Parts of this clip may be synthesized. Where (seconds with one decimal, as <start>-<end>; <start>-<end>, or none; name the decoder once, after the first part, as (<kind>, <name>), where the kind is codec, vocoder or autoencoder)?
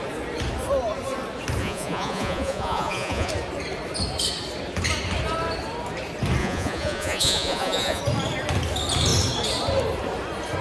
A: 1.6-3.3 (vocoder, Vocos); 6.4-8.0